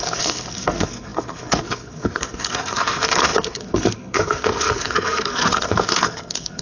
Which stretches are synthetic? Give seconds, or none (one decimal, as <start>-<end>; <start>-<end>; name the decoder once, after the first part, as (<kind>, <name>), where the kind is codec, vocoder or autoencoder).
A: 0.0-6.6 (codec, SNAC)